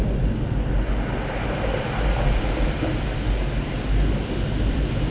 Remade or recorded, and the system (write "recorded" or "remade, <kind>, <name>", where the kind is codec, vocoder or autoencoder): recorded